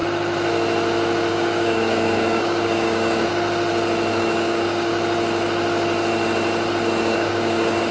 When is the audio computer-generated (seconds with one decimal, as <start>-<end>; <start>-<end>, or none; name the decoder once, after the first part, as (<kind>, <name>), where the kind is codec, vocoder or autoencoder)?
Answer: 1.3-3.3 (codec, DAC); 4.1-4.9; 7.0-7.9